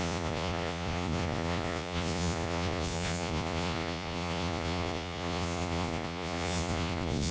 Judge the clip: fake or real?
fake